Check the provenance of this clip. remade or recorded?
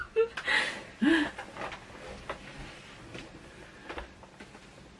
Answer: recorded